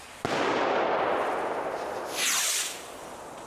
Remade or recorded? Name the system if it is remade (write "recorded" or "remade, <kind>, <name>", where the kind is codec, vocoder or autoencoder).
recorded